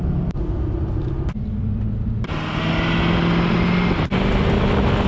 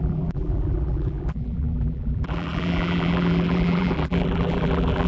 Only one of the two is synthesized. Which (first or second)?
second